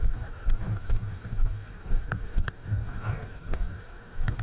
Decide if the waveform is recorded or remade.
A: remade